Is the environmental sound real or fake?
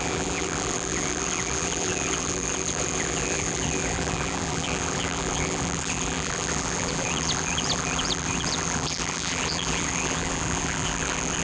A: fake